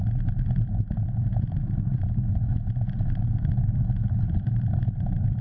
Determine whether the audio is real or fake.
real